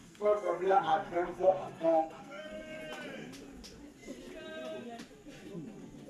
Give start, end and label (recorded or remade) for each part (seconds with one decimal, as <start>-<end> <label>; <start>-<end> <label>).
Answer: 0.0-2.8 remade; 2.8-6.1 recorded